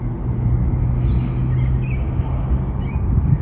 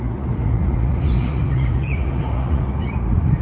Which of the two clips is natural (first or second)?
first